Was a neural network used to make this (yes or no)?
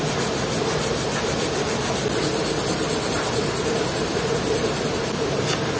no